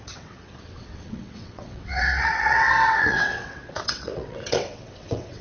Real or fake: fake